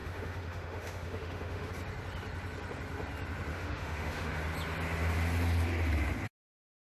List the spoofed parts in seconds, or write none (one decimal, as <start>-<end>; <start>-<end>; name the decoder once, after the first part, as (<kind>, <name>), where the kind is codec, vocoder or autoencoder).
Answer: 0.0-1.7 (autoencoder, DAC-VAE); 3.5-4.4